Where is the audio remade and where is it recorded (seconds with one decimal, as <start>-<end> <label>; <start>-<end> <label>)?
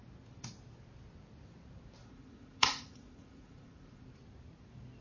0.0-2.0 recorded; 2.0-4.0 remade; 4.0-5.0 recorded